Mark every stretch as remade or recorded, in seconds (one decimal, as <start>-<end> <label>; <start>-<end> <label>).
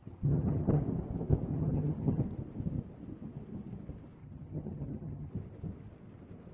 0.0-0.8 remade; 0.8-1.5 recorded; 1.5-2.2 remade; 2.2-4.2 recorded; 4.2-5.3 remade; 5.3-6.5 recorded